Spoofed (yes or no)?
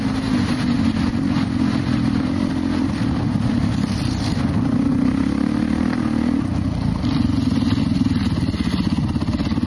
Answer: no